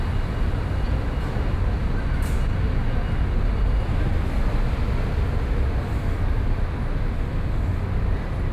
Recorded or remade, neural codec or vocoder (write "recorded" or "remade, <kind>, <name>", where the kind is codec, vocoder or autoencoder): recorded